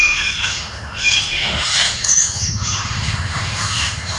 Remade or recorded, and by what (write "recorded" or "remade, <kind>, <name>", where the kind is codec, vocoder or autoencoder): remade, autoencoder, DAC-VAE